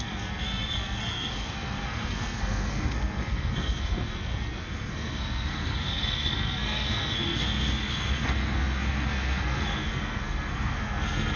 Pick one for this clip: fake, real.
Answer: fake